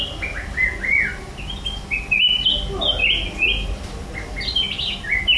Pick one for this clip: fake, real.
real